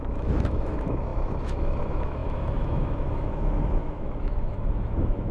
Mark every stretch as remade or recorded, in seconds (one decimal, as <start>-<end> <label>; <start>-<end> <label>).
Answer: 0.0-5.3 remade